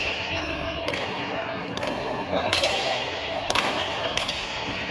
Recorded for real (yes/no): no